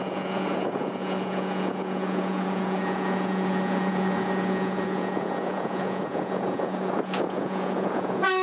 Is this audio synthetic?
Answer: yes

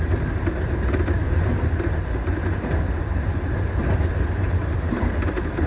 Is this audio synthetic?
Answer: no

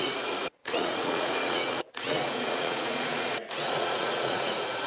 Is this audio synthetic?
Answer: yes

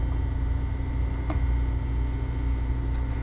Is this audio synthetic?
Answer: no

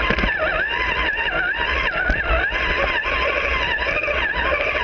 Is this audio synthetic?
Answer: no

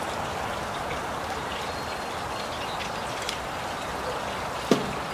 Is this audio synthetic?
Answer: no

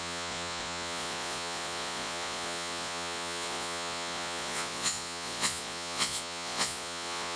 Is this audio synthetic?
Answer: yes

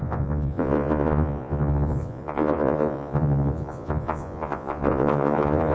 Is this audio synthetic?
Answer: yes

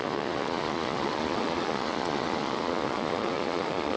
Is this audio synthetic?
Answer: yes